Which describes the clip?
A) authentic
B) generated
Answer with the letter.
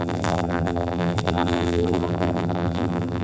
B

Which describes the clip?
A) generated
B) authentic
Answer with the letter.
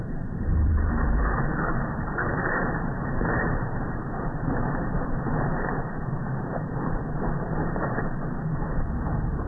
A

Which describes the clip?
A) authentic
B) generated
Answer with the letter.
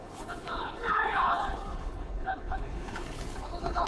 B